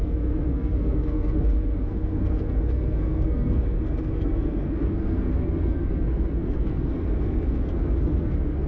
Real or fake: fake